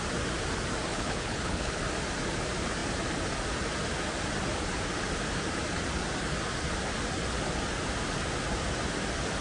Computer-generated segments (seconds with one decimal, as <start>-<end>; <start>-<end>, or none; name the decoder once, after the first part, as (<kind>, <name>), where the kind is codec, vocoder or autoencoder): 0.9-1.8 (codec, HILCodec)